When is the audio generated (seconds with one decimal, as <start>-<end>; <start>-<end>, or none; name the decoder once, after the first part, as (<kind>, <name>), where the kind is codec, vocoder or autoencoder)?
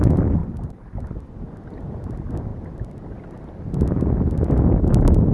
none